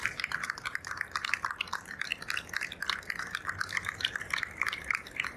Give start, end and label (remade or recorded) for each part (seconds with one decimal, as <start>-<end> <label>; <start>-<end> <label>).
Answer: 0.0-2.1 remade; 2.1-3.2 recorded; 3.2-5.4 remade

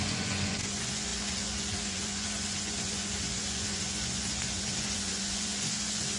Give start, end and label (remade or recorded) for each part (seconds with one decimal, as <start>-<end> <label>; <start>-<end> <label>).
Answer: 0.0-6.2 remade

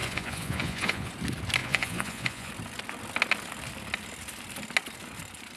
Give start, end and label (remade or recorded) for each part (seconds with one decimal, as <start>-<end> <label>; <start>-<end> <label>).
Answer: 0.0-1.1 remade; 1.1-1.6 recorded; 1.6-2.5 remade; 2.5-5.6 recorded

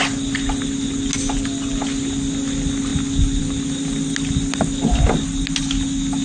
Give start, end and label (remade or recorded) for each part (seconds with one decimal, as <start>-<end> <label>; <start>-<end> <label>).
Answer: 0.0-6.2 recorded

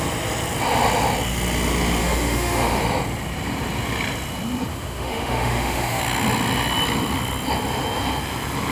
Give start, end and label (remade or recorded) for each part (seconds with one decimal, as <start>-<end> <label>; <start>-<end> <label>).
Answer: 0.0-2.0 recorded; 2.0-2.8 remade; 2.8-4.7 recorded; 4.7-6.0 remade; 6.0-8.7 recorded